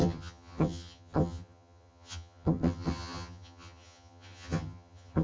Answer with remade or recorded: remade